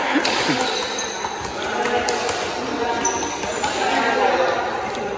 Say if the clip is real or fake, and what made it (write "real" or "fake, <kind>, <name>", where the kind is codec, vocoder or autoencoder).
real